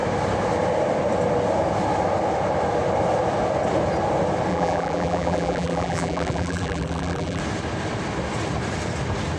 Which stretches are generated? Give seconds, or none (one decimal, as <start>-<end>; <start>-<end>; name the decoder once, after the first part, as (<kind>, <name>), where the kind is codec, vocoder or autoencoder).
4.5-7.4 (vocoder, BigVGAN v2)